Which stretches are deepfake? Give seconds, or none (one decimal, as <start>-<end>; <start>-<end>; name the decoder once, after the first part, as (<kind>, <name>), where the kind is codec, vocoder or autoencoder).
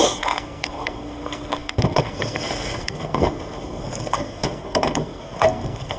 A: 0.0-6.0 (codec, SNAC)